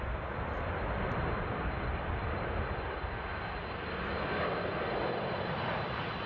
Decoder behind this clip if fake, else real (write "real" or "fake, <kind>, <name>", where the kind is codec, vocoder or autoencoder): real